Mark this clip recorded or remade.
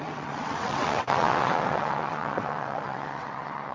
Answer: remade